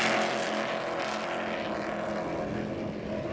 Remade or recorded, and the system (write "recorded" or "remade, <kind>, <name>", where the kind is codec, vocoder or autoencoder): recorded